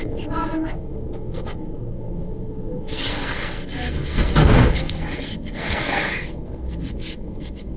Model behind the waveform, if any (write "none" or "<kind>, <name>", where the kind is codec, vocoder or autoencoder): codec, SNAC